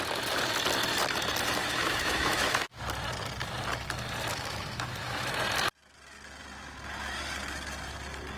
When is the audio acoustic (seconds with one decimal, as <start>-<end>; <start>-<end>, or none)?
0.0-1.6; 2.8-4.3; 5.3-8.4